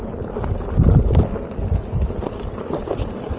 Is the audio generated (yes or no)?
no